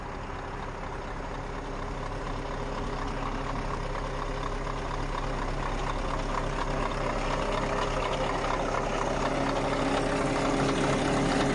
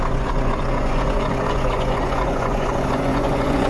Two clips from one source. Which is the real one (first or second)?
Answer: first